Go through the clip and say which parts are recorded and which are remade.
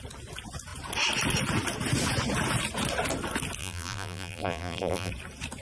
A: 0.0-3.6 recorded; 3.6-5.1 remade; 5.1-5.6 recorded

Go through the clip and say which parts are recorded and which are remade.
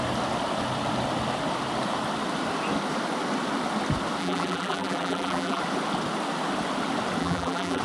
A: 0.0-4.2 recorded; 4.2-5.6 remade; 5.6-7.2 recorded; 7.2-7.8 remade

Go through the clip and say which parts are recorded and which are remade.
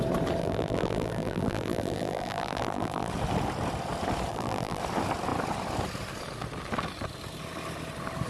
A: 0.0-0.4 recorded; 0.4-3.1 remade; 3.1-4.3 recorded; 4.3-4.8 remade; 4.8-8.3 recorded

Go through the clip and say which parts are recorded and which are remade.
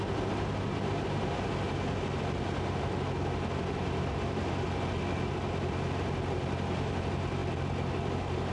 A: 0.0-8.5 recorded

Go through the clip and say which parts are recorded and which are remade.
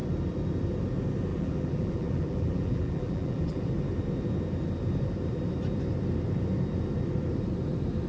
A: 0.0-1.3 recorded; 1.3-3.6 remade; 3.6-8.1 recorded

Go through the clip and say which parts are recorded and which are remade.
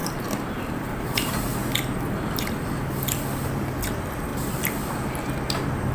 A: 0.0-3.5 remade; 3.5-4.3 recorded; 4.3-4.9 remade; 4.9-5.9 recorded